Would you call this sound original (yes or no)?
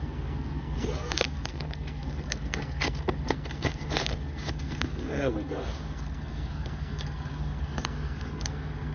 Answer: no